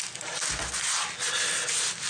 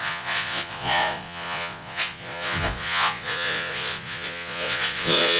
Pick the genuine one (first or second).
first